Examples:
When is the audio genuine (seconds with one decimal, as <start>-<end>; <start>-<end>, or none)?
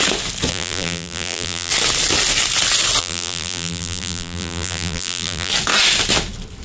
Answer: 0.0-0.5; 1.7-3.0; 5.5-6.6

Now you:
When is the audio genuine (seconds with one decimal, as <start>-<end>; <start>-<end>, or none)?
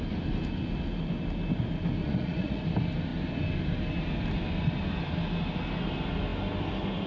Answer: 0.0-2.0; 2.6-7.1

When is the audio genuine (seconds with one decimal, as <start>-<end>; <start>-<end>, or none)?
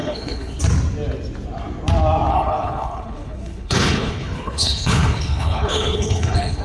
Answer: 0.6-2.3